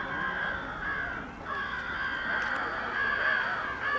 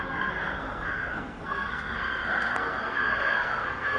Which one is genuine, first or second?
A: first